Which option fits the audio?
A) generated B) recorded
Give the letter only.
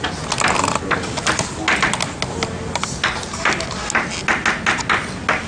B